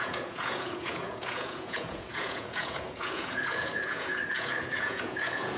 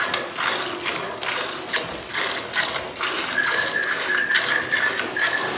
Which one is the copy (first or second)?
first